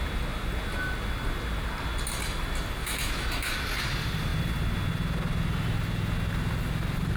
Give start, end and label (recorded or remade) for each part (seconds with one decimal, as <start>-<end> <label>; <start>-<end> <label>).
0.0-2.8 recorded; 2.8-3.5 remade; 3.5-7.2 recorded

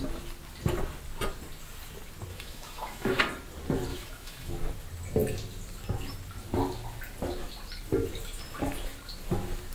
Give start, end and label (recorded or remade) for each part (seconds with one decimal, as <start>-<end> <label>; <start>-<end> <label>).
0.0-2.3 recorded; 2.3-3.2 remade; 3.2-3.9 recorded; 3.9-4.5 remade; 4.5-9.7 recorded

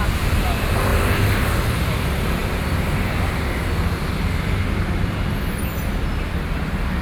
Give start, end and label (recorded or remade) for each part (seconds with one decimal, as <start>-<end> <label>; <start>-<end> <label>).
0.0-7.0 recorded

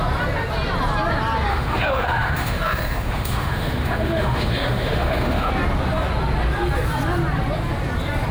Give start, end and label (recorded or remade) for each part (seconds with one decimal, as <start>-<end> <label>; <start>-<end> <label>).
0.0-1.5 recorded; 1.5-5.5 remade; 5.5-8.3 recorded

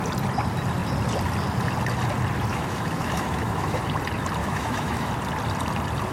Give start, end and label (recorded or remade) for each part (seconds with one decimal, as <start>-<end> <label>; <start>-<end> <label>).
0.0-2.5 recorded; 2.5-3.8 remade; 3.8-4.4 recorded; 4.4-5.1 remade; 5.1-6.1 recorded